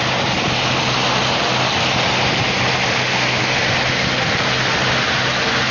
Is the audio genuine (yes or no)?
yes